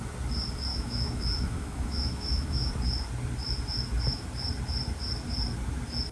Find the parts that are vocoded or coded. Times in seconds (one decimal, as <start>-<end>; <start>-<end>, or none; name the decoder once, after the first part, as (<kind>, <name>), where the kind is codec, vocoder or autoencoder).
0.7-2.7 (autoencoder, DAC-VAE)